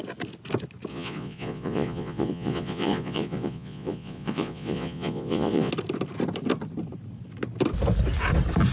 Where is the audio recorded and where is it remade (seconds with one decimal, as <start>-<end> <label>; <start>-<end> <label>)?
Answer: 0.0-0.9 recorded; 0.9-5.7 remade; 5.7-8.7 recorded